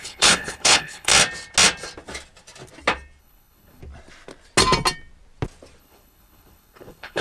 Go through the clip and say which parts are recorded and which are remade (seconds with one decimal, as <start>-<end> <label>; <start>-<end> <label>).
0.0-1.1 remade; 1.1-3.2 recorded; 3.2-3.8 remade; 3.8-5.8 recorded; 5.8-7.2 remade